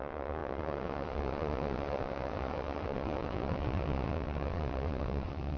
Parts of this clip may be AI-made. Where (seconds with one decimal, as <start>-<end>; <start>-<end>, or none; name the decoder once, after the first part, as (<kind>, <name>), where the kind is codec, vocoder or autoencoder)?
0.0-5.6 (vocoder, WaveNeXt)